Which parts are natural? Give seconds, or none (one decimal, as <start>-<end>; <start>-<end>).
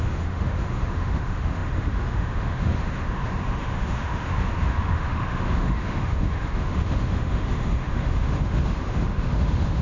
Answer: none